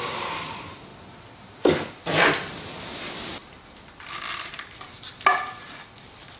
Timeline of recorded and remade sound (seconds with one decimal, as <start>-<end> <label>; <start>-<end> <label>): 0.0-0.9 remade; 0.9-2.0 recorded; 2.0-6.4 remade